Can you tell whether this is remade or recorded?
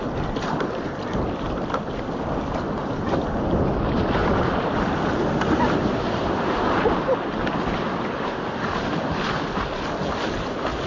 recorded